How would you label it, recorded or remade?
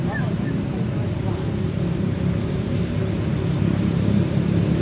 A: remade